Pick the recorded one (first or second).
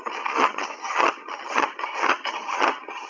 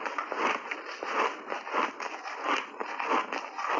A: second